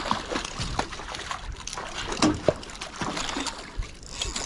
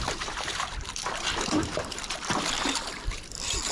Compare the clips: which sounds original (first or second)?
first